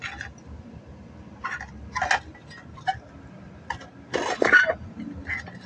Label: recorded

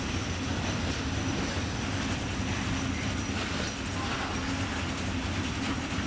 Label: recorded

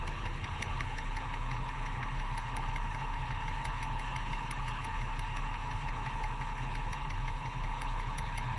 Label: remade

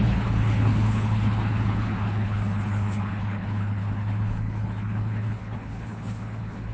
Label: remade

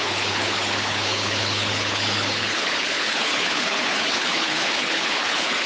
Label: remade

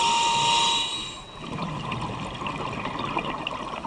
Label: recorded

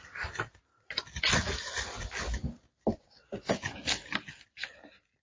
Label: recorded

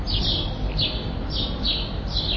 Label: recorded